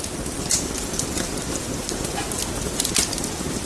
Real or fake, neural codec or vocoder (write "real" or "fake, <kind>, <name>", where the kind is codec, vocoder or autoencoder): real